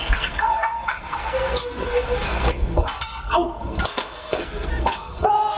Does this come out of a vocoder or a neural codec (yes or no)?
yes